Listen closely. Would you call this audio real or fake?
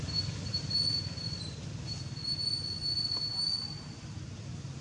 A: real